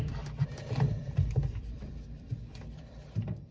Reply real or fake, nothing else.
fake